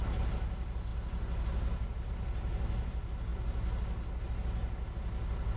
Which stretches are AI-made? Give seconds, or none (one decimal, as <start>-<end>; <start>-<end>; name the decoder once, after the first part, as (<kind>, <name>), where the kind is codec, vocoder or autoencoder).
none